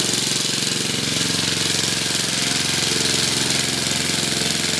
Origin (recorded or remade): recorded